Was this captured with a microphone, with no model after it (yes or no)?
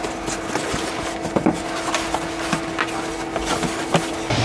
yes